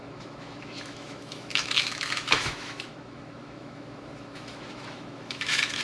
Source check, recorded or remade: remade